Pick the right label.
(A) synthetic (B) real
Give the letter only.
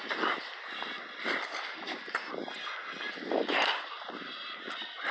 B